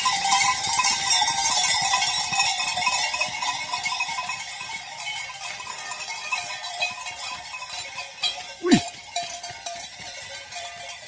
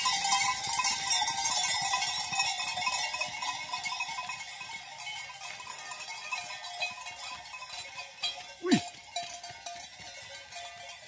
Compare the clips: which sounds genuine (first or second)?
second